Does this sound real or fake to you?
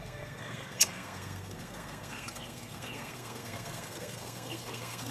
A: fake